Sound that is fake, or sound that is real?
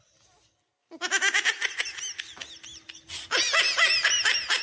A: real